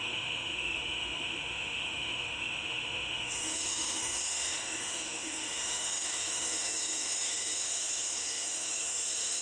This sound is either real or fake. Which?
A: fake